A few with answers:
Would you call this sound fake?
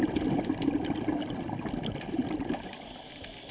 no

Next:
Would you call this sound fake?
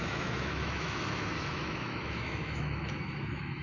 yes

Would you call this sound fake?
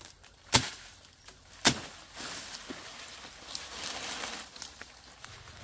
no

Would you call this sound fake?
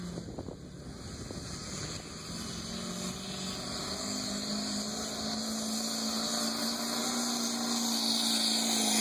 no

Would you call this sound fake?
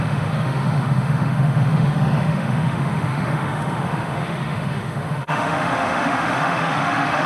yes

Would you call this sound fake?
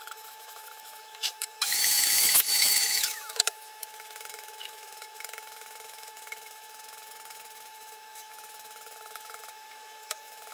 yes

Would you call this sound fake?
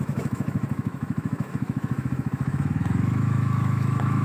yes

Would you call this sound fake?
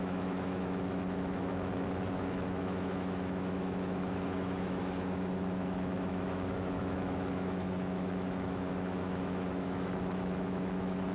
yes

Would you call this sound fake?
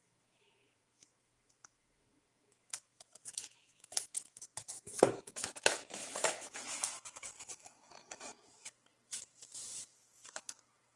yes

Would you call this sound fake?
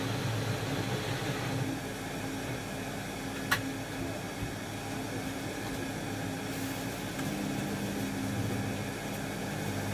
no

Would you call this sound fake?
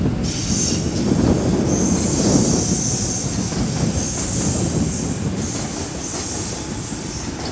no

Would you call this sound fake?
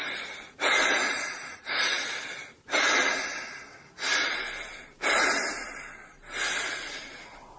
no